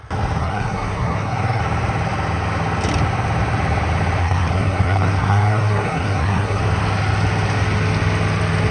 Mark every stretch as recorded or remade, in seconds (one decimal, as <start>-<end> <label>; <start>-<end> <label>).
0.0-0.4 recorded; 0.4-1.6 remade; 1.6-4.2 recorded; 4.2-6.6 remade; 6.6-8.7 recorded